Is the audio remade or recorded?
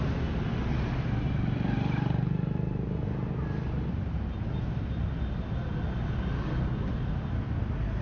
recorded